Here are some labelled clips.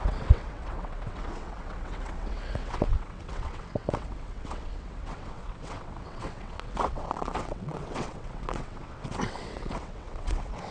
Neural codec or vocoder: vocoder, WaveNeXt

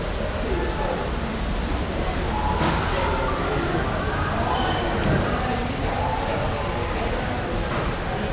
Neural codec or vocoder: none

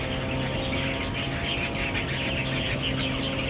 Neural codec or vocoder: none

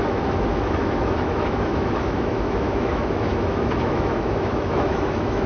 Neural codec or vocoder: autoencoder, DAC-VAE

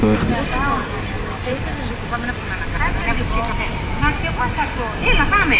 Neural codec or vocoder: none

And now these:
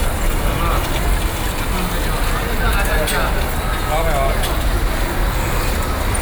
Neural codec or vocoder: none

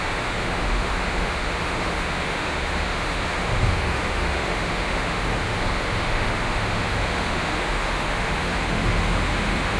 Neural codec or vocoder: autoencoder, DAC-VAE